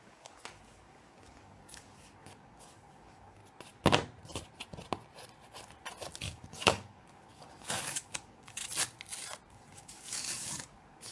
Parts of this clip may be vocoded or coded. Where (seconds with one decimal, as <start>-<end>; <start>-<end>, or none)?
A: 0.0-3.4; 6.2-8.6; 9.5-11.1